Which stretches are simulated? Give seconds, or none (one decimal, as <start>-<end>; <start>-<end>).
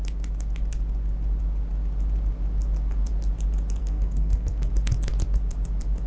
3.8-4.7